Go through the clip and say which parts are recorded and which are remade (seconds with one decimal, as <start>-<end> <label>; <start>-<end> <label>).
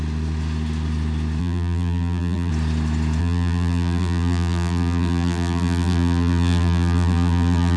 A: 0.0-1.4 recorded; 1.4-2.5 remade; 2.5-3.2 recorded; 3.2-7.8 remade